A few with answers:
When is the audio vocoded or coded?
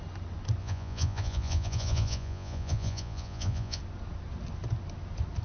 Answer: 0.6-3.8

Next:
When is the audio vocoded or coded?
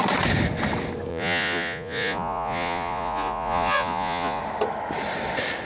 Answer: 1.1-4.4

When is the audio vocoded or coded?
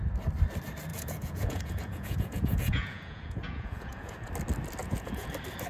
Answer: 0.9-4.3; 4.8-5.3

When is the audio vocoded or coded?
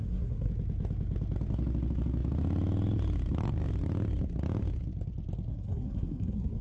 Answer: 0.0-0.5; 5.5-6.6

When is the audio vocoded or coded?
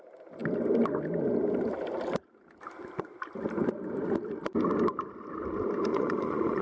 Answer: 5.9-6.6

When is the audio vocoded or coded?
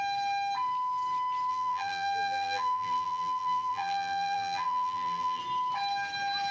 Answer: 1.5-5.4